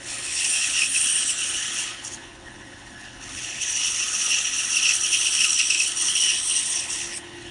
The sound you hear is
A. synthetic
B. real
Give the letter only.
A